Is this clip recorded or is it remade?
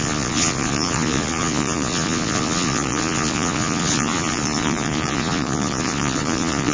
remade